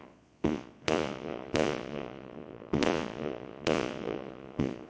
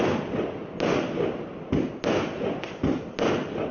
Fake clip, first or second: first